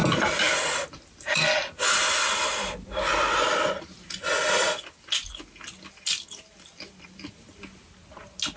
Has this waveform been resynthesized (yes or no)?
no